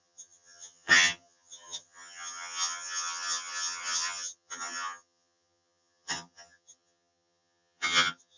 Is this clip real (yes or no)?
no